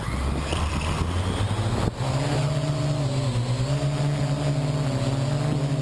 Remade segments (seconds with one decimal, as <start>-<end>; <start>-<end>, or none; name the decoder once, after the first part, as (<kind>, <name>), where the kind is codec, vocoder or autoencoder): none